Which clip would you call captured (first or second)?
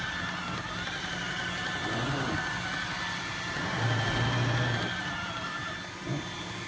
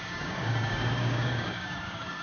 first